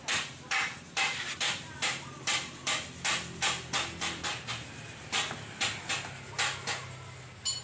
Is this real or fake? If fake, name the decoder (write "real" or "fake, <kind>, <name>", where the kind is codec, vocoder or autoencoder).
real